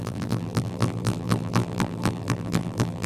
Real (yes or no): no